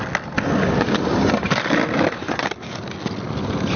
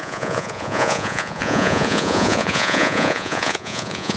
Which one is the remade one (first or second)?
second